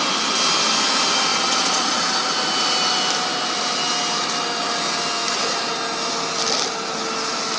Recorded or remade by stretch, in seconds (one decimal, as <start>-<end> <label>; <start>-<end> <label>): 0.0-1.3 recorded; 1.3-2.1 remade; 2.1-7.6 recorded